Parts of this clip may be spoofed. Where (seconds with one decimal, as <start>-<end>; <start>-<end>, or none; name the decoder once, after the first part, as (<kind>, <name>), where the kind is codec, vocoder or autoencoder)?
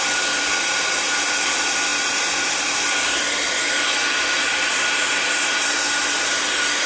none